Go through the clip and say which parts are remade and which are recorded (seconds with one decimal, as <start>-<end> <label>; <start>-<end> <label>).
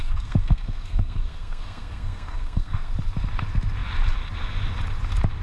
0.0-2.9 remade; 2.9-5.4 recorded